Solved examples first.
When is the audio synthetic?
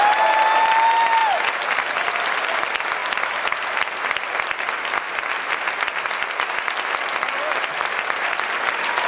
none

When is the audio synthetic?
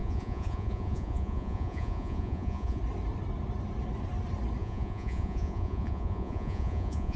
0.0-2.8 (vocoder, Vocos); 4.6-7.2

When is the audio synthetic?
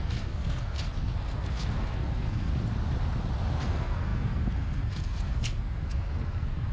0.0-2.5 (codec, SNAC); 3.6-6.7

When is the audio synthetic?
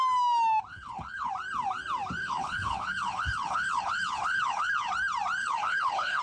0.7-1.3 (codec, HILCodec); 2.2-4.9; 5.4-6.2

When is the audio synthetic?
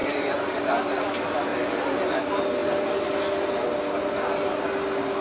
none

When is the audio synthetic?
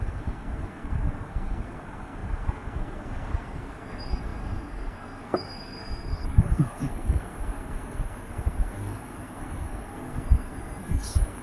0.0-11.4 (codec, SNAC)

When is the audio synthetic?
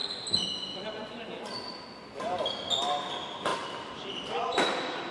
none